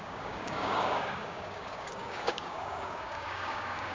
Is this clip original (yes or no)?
no